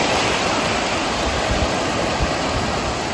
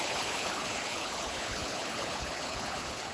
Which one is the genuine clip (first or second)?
first